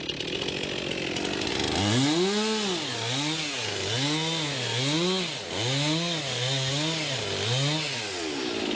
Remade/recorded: recorded